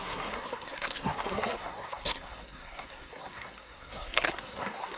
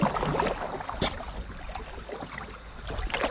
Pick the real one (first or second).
second